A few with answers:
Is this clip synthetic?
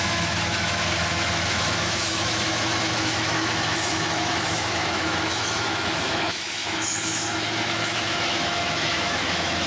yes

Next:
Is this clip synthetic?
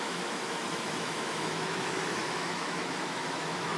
yes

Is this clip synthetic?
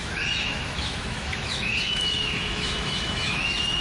yes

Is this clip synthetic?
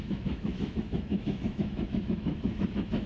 yes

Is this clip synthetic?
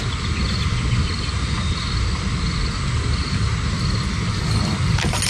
no